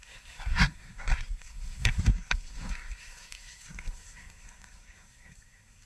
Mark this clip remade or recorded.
remade